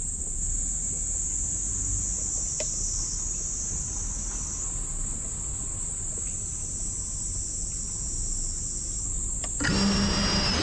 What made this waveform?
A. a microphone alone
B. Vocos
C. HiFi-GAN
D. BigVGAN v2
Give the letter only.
A